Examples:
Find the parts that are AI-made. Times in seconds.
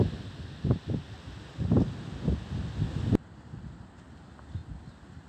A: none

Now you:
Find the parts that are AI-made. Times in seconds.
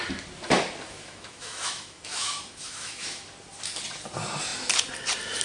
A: 0.9-3.2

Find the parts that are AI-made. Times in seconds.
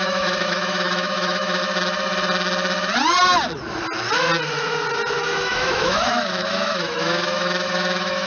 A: 0.0-1.6; 5.2-8.3